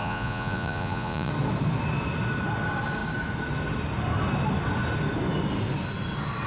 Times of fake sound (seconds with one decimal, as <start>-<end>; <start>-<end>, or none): 0.0-1.3